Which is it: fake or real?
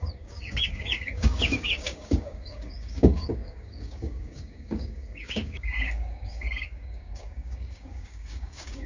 fake